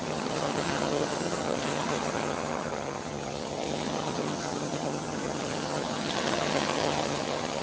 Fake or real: fake